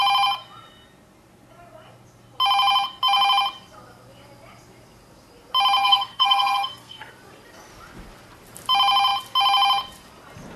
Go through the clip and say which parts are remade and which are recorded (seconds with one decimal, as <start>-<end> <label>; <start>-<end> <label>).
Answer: 0.0-5.8 recorded; 5.8-7.1 remade; 7.1-10.6 recorded